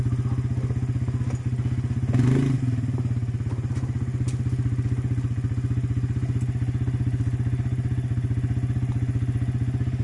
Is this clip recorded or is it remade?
recorded